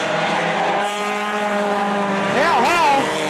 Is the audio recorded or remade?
remade